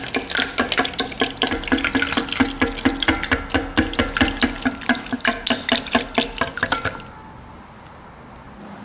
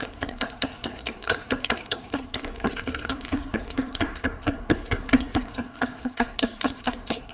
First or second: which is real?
first